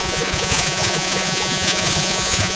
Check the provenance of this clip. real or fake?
fake